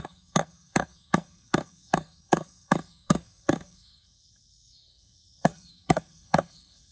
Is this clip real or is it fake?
fake